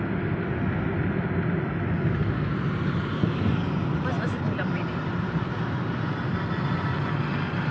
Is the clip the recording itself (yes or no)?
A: yes